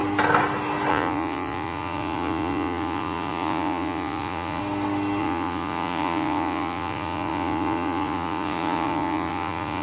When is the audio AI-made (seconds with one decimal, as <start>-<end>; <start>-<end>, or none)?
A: 0.9-4.6; 5.2-9.8